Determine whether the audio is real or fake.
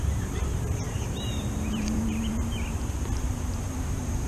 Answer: fake